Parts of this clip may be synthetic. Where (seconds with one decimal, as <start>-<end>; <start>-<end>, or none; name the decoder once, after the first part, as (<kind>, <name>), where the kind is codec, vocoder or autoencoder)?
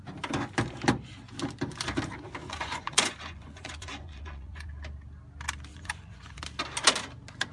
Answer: 2.4-4.7 (vocoder, Vocos); 5.7-6.4